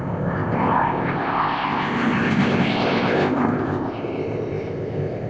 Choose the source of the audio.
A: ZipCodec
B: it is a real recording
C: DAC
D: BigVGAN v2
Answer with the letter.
A